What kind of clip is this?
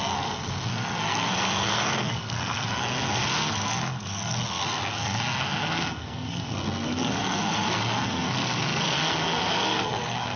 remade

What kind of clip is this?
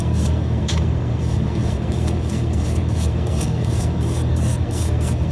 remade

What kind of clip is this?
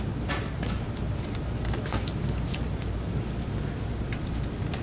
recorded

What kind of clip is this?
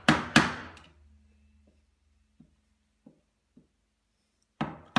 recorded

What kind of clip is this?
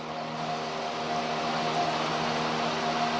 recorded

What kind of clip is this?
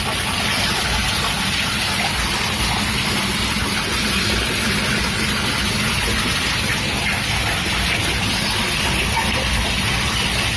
recorded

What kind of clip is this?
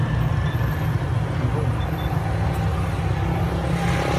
recorded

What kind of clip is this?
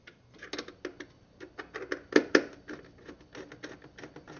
recorded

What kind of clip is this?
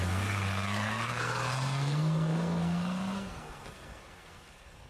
remade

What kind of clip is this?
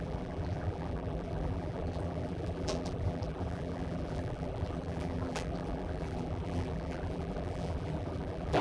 remade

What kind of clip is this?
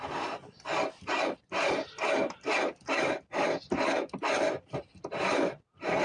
recorded